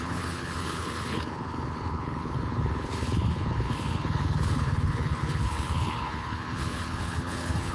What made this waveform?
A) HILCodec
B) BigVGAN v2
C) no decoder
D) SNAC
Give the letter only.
A